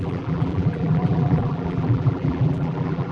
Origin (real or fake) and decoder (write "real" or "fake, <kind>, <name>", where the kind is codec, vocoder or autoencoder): fake, vocoder, BigVGAN v2